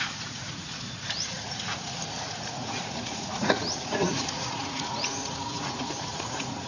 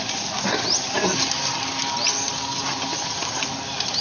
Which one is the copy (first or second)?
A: first